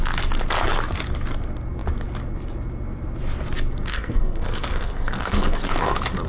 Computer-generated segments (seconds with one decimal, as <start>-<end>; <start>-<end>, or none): 3.9-5.7